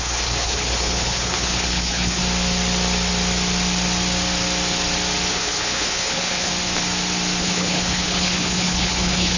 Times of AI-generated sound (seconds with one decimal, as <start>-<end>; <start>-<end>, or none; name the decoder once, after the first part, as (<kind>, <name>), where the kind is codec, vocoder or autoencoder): 0.0-2.2 (codec, HILCodec); 5.3-6.5; 7.4-9.4